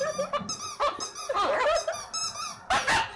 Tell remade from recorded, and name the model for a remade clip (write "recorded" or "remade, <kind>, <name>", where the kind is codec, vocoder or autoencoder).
recorded